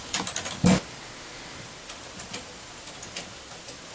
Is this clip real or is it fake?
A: real